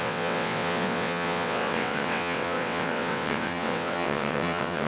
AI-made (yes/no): yes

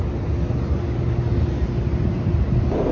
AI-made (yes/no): no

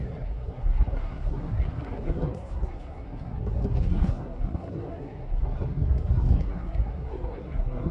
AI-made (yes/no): yes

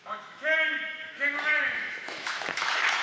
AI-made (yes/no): yes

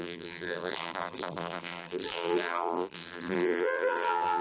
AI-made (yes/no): yes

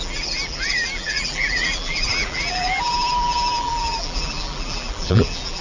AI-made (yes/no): yes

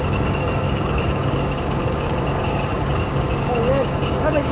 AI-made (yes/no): yes